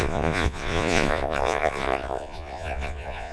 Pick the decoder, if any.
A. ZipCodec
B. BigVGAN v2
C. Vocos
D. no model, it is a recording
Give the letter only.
C